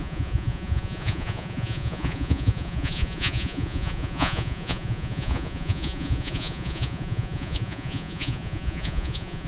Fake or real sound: fake